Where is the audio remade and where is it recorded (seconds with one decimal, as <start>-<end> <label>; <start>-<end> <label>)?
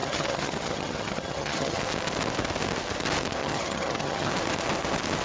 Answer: 0.0-1.8 remade; 1.8-3.4 recorded; 3.4-4.3 remade; 4.3-5.2 recorded